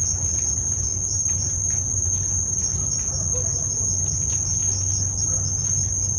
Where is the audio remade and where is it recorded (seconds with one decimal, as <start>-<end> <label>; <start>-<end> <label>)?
0.0-6.2 recorded